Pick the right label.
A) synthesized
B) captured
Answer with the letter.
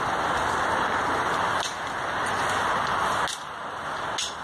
B